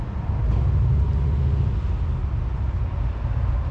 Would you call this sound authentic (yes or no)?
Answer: yes